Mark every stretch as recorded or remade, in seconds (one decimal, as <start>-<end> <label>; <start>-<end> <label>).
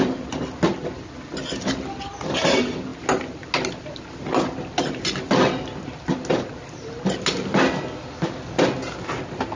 0.0-9.6 recorded